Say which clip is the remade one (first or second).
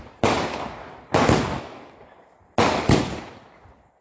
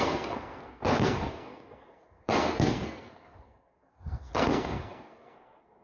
second